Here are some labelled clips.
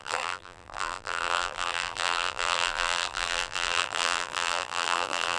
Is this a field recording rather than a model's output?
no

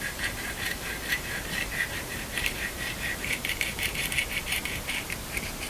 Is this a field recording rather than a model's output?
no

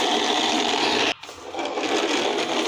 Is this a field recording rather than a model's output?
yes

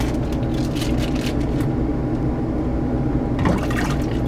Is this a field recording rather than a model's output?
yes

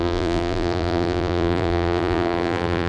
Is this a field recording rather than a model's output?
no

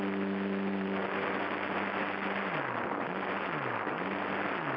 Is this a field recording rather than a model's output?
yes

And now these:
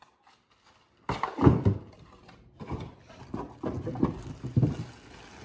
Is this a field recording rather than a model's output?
yes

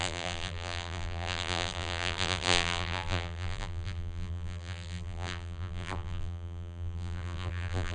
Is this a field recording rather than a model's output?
no